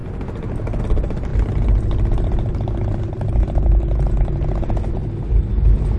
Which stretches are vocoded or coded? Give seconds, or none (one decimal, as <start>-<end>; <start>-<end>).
none